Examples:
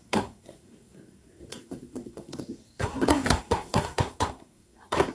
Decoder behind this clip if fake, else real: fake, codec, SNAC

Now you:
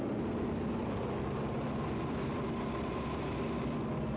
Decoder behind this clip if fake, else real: real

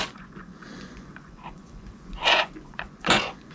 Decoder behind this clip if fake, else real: fake, vocoder, Vocos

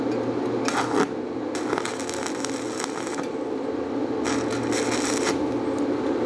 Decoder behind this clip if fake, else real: real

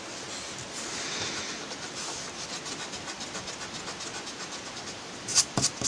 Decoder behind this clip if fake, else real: real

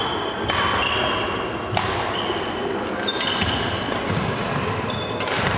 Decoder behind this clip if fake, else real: real